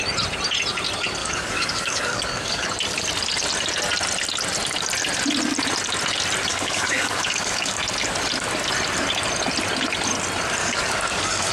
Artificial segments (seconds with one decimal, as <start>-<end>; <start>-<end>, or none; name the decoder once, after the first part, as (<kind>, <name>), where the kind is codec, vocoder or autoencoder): 1.2-2.7 (codec, DAC); 6.5-7.8; 10.6-11.5